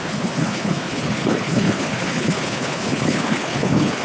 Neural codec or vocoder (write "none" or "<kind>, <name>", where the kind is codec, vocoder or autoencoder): codec, HILCodec